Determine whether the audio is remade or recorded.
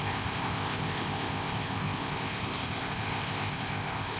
remade